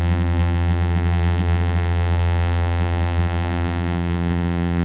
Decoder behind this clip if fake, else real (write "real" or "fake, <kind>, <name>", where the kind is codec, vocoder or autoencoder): fake, vocoder, BigVGAN v2